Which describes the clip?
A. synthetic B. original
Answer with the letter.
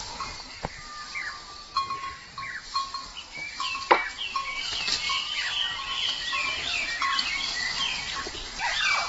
B